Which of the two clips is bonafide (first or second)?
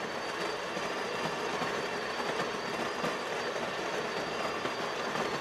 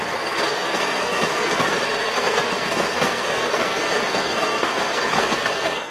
first